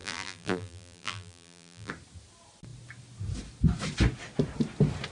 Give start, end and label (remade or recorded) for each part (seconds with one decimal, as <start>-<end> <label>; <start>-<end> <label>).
0.0-1.9 remade; 1.9-5.1 recorded